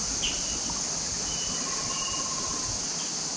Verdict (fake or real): real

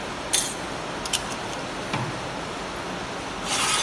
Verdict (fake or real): real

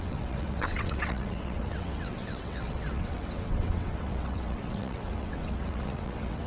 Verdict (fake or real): fake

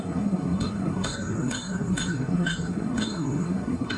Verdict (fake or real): fake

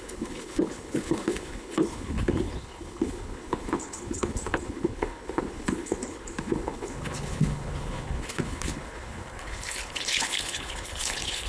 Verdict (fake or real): fake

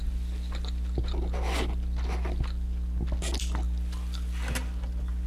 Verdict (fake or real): real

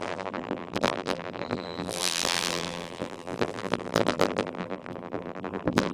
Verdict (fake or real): fake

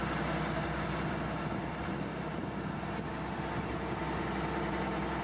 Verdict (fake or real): real